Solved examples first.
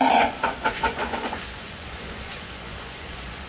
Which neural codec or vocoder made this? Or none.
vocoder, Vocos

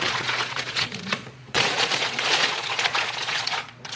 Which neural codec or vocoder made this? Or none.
vocoder, Vocos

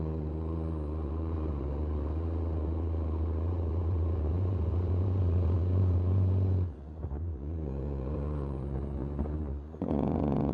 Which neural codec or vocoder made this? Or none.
vocoder, Vocos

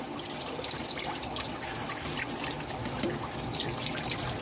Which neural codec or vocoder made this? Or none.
none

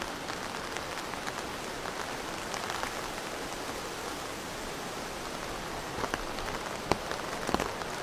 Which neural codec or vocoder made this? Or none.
none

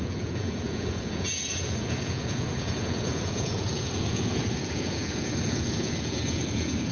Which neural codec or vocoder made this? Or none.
vocoder, Vocos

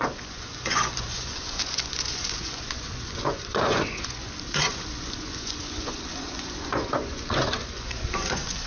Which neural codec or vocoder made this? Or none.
vocoder, Vocos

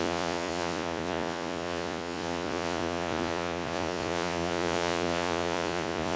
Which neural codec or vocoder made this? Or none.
vocoder, Vocos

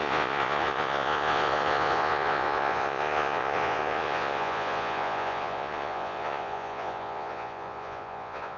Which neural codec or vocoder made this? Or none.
vocoder, Vocos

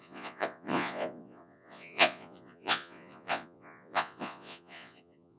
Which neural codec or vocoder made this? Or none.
vocoder, Vocos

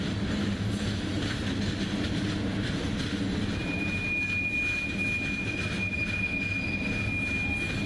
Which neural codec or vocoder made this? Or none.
none